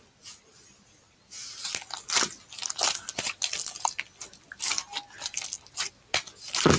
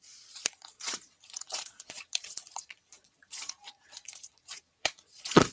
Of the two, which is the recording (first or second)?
first